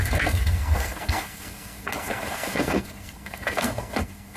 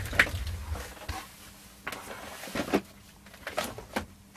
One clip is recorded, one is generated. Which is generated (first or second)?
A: first